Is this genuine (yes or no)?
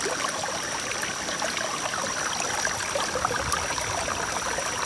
yes